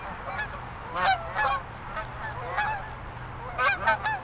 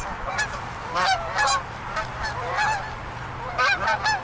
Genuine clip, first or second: first